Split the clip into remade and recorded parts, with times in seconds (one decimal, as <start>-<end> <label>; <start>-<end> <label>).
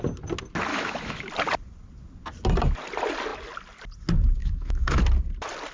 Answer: 0.0-0.7 recorded; 0.7-1.2 remade; 1.2-4.4 recorded; 4.4-5.0 remade; 5.0-5.7 recorded